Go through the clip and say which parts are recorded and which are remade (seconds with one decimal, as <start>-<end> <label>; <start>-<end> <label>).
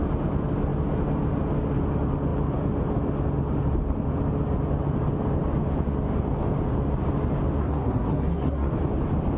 0.0-7.6 recorded; 7.6-8.7 remade; 8.7-9.4 recorded